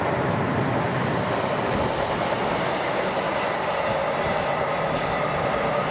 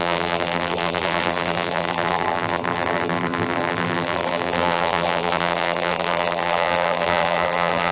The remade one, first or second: second